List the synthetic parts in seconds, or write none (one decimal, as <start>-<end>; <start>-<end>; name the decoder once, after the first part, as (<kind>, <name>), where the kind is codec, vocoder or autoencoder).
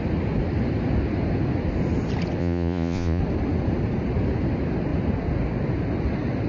2.4-3.2 (vocoder, Vocos)